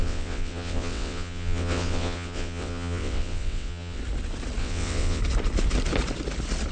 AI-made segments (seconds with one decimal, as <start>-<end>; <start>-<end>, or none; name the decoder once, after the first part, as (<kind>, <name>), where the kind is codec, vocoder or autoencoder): 0.0-4.0 (vocoder, WaveNeXt); 4.6-5.2